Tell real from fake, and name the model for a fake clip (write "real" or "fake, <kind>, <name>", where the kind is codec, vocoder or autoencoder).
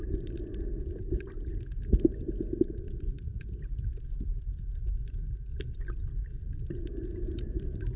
real